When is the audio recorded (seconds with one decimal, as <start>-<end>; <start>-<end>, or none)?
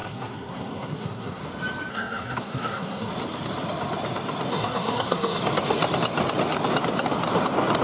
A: 1.4-1.9; 3.1-4.5; 5.4-7.8